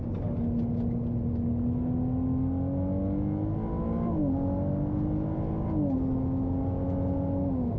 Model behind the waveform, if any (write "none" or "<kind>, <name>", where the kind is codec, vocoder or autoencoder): none